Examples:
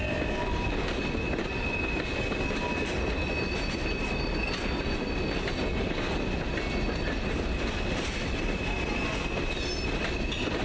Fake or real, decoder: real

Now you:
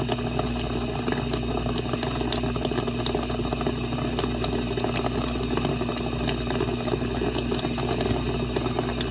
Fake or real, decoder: real